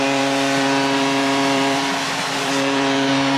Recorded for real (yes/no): no